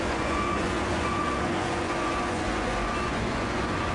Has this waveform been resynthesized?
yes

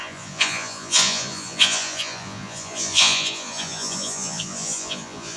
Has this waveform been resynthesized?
yes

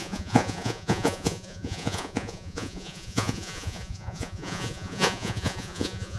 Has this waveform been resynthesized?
yes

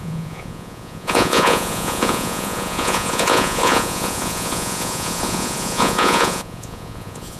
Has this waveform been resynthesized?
yes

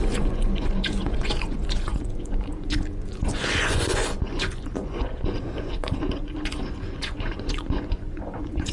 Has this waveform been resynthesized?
yes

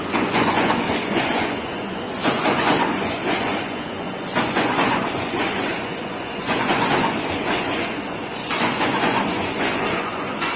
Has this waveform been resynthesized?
yes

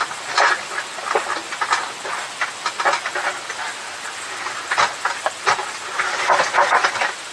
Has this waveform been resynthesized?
no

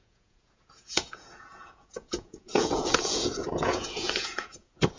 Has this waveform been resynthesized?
yes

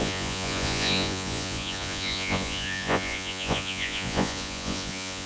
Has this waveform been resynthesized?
yes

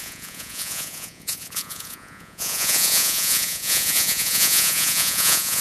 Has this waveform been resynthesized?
yes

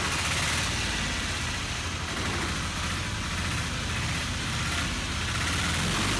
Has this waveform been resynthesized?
no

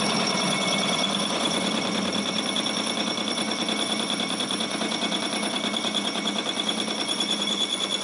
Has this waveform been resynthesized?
yes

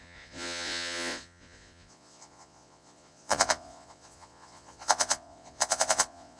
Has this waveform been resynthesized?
yes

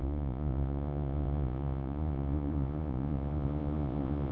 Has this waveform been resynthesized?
yes